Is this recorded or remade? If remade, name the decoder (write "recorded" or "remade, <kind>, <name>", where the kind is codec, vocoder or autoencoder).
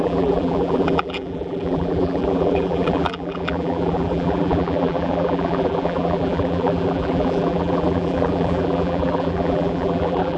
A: remade, vocoder, BigVGAN v2